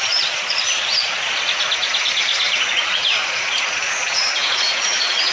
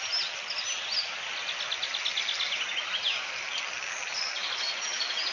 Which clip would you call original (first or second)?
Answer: second